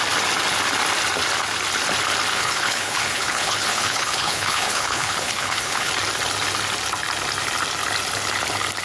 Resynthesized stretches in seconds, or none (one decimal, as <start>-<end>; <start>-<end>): 2.3-5.9